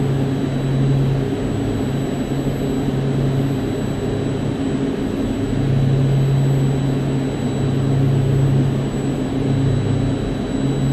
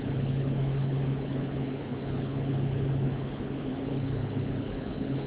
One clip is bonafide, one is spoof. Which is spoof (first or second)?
second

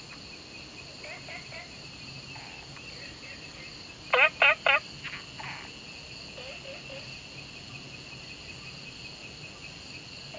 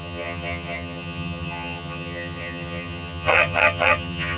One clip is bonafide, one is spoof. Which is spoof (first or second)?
second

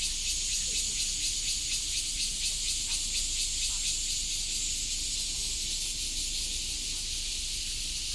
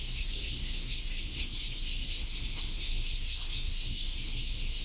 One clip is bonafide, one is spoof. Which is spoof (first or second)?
second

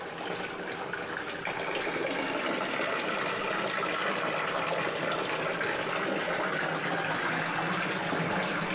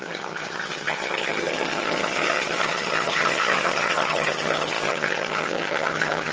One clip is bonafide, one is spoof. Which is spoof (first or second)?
second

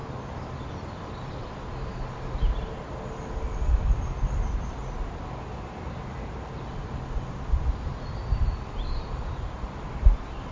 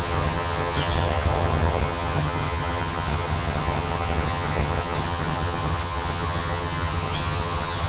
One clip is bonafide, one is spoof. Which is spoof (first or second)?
second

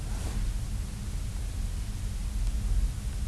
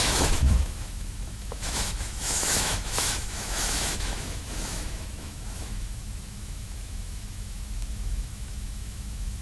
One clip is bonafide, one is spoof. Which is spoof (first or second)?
second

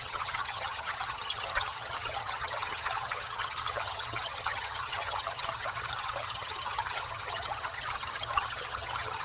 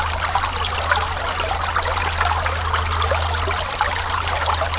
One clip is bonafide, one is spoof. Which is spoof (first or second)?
first